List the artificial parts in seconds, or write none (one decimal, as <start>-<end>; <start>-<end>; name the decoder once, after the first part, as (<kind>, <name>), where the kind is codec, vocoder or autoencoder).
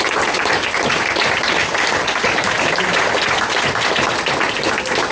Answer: none